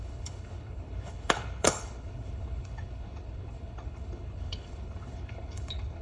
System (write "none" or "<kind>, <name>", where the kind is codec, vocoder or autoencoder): codec, HILCodec